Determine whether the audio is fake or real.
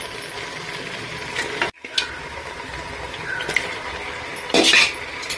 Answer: real